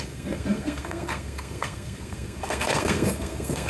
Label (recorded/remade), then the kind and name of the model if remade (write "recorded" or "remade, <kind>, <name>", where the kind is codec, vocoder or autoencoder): remade, codec, SNAC